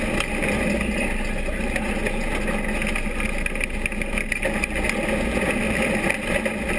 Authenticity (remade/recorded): recorded